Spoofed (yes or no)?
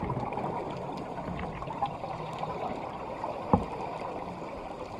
yes